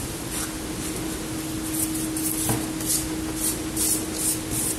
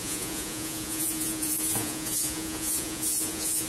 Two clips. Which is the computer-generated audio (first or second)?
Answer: second